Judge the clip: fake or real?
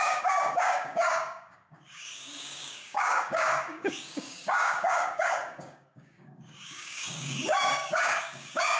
fake